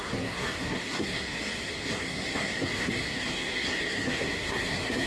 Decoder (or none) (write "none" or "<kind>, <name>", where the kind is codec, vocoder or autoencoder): codec, SNAC